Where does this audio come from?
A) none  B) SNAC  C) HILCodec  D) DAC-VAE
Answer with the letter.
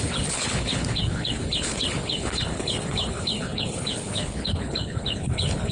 C